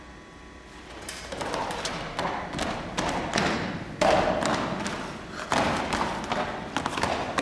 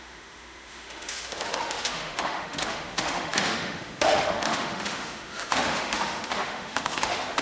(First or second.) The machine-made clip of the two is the second